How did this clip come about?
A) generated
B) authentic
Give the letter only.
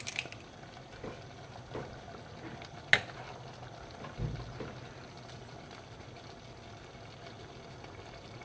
B